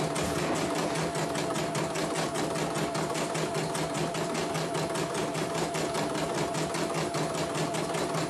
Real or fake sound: real